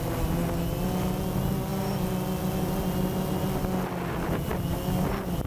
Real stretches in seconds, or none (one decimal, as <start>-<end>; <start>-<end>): 0.0-5.5